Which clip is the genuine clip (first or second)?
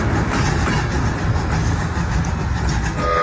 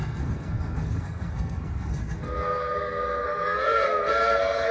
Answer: first